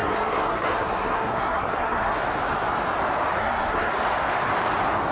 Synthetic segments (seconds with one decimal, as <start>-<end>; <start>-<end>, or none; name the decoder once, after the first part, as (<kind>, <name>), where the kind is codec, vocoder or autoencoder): 0.0-2.2 (codec, SNAC); 3.4-3.9